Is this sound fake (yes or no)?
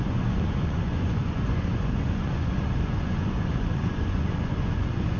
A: yes